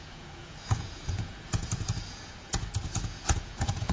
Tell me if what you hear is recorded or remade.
remade